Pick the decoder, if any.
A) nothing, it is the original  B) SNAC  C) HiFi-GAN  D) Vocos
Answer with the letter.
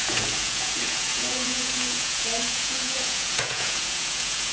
D